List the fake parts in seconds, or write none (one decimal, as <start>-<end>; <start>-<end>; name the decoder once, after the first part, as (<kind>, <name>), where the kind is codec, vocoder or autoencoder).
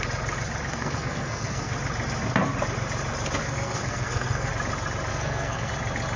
0.7-1.7 (codec, SNAC); 3.4-4.5; 5.1-5.7